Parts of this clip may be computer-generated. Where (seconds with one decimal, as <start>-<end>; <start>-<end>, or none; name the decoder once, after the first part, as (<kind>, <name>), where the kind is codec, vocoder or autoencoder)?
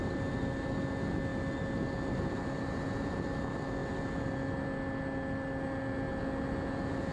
none